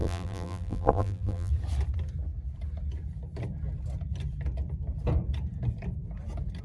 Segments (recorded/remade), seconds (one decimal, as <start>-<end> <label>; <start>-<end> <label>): 0.0-1.5 remade; 1.5-6.6 recorded